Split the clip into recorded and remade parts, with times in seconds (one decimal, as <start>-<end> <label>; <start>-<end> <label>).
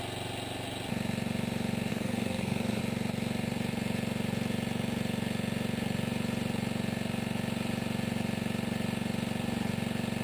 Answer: 0.0-1.9 recorded; 1.9-2.8 remade; 2.8-10.2 recorded